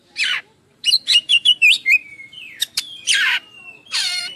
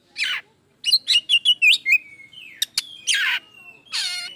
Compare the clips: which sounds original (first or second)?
second